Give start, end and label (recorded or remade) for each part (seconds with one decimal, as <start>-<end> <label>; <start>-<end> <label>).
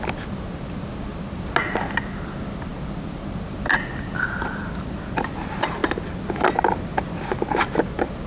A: 0.0-8.3 recorded